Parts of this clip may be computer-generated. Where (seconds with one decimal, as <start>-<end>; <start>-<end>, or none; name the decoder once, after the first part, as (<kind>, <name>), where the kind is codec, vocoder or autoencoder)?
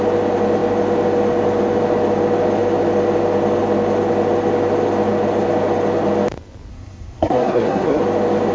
6.7-8.0 (codec, SNAC)